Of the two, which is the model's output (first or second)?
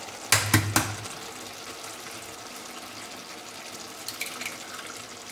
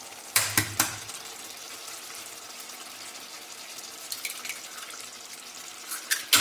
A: second